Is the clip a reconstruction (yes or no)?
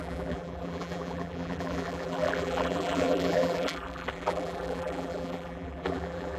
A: yes